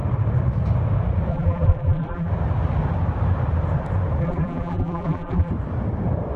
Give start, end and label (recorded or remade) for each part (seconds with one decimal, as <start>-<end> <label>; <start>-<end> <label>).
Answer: 0.0-1.3 recorded; 1.3-2.3 remade; 2.3-4.2 recorded; 4.2-5.5 remade; 5.5-6.4 recorded